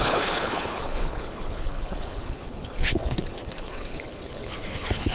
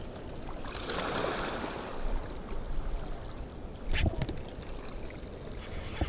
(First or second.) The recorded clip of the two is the second